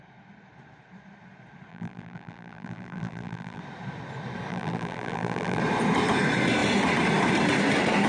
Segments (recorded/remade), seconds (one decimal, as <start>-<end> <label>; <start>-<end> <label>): 0.0-1.7 recorded; 1.7-3.6 remade; 3.6-4.5 recorded; 4.5-5.6 remade; 5.6-8.1 recorded